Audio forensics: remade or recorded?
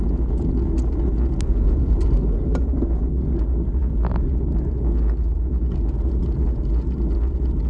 recorded